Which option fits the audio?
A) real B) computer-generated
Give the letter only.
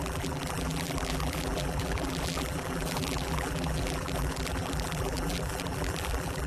B